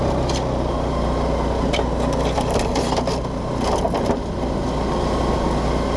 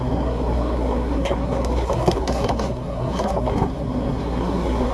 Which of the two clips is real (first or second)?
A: first